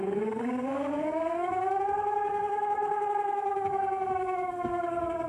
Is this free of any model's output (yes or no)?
no